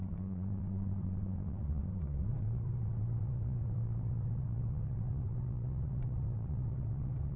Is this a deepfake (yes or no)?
yes